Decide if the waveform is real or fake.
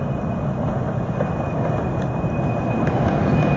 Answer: real